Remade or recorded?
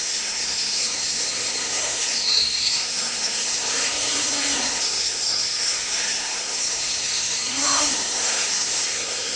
remade